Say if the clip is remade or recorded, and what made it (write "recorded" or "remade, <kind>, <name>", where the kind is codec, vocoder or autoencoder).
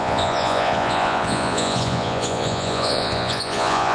remade, vocoder, Vocos